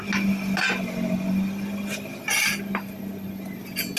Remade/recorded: recorded